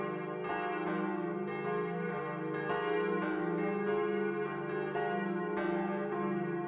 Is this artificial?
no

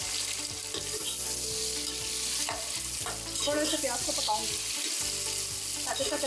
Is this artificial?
no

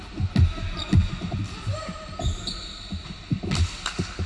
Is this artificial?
no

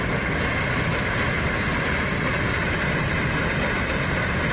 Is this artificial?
no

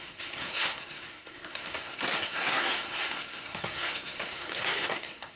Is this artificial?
yes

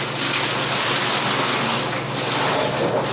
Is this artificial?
no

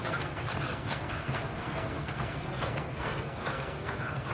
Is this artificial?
yes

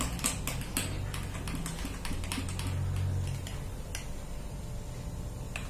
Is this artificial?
no